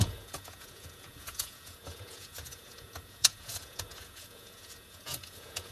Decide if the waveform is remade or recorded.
remade